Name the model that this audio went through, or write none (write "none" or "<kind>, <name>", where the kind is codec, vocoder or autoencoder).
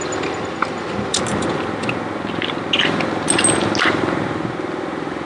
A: none